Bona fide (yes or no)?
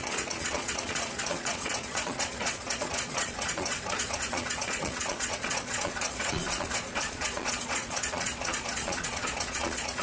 no